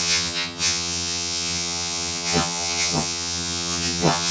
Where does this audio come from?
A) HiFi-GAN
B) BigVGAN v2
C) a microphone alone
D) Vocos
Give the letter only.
A